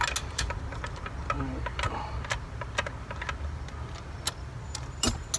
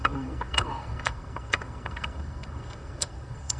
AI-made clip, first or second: second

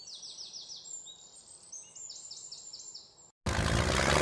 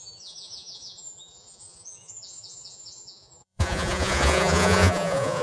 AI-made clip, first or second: second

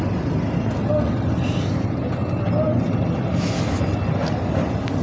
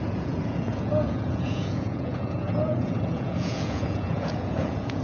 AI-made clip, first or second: second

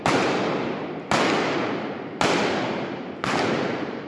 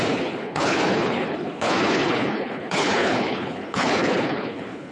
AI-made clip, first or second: second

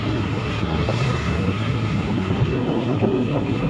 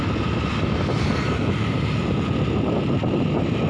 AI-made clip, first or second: first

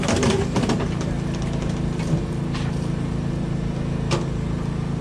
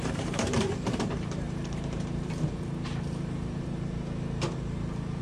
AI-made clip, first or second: second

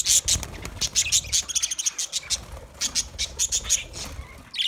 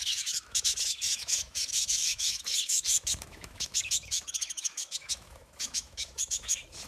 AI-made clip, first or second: second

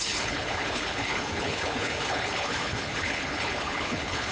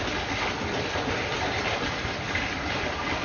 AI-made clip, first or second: first